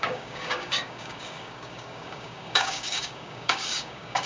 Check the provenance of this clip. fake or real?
fake